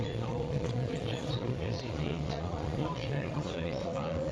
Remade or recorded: remade